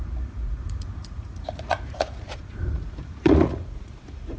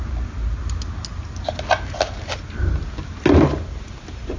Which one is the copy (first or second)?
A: first